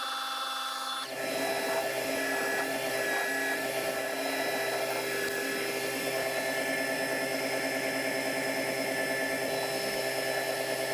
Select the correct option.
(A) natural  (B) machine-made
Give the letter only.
A